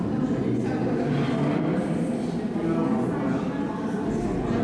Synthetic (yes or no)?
no